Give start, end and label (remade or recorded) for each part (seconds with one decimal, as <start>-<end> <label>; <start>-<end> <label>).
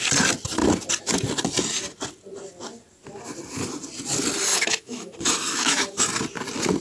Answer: 0.0-4.5 recorded; 4.5-6.0 remade; 6.0-6.8 recorded